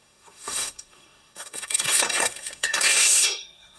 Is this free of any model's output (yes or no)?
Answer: no